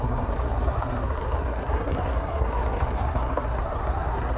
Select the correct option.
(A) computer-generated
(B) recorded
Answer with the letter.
A